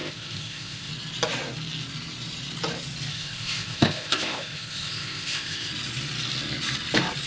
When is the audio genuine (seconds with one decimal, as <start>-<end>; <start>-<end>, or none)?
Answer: 0.9-3.1; 5.7-7.3